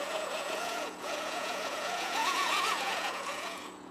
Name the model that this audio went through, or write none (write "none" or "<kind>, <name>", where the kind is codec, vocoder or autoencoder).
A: vocoder, Vocos